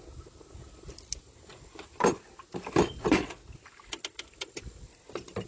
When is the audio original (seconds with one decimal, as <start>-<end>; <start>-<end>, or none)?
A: 0.0-5.5